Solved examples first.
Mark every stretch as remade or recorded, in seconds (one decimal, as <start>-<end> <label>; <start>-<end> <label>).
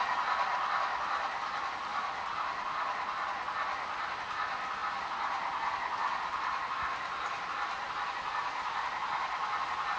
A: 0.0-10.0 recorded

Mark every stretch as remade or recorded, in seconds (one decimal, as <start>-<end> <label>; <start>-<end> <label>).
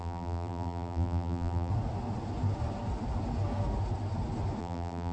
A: 0.0-1.7 remade; 1.7-4.6 recorded; 4.6-5.1 remade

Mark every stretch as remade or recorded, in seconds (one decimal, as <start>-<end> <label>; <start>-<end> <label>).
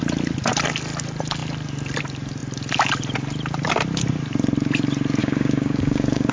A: 0.0-5.2 recorded; 5.2-6.3 remade